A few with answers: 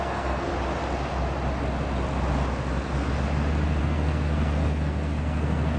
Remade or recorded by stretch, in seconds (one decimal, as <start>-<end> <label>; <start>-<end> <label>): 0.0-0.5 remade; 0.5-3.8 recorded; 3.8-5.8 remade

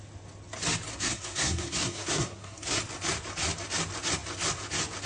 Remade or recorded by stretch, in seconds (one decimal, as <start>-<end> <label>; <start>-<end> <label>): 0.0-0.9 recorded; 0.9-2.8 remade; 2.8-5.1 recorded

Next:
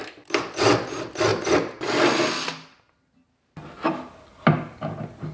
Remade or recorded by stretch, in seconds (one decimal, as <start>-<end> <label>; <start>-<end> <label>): 0.0-5.3 recorded

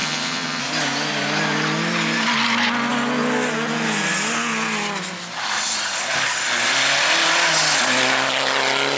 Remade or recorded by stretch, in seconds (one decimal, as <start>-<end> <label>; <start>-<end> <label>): 0.0-0.6 remade; 0.6-9.0 recorded

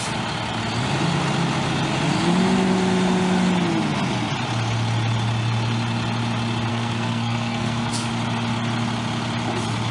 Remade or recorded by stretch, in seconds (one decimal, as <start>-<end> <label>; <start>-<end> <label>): 0.0-6.7 recorded; 6.7-8.1 remade; 8.1-9.9 recorded

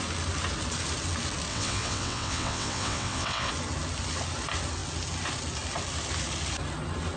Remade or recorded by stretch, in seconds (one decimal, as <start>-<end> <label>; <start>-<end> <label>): 0.0-1.5 recorded; 1.5-3.5 remade; 3.5-7.2 recorded

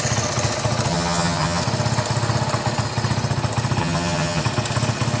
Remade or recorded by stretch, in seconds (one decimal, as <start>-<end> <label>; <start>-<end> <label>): 0.0-0.9 recorded; 0.9-1.6 remade; 1.6-3.8 recorded; 3.8-4.4 remade; 4.4-5.2 recorded

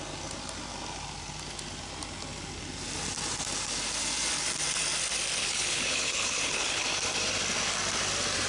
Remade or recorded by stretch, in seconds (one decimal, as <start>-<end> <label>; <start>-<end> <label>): 0.0-5.4 recorded; 5.4-6.8 remade; 6.8-8.5 recorded